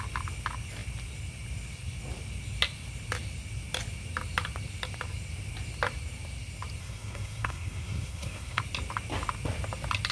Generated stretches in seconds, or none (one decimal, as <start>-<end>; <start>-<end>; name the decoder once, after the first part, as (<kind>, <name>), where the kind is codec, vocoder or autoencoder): 6.8-8.6 (codec, SNAC)